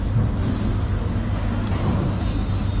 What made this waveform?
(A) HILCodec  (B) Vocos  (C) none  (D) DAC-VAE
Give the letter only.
C